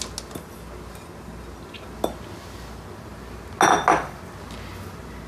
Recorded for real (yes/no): yes